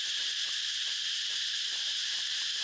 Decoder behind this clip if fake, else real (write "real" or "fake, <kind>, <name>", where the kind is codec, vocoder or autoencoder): fake, vocoder, BigVGAN v2